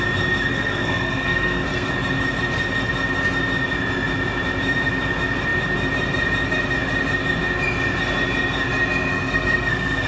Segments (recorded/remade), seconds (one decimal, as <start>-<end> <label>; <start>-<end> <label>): 0.0-0.5 recorded; 0.5-1.9 remade; 1.9-9.1 recorded; 9.1-10.1 remade